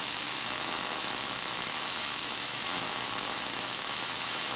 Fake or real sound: fake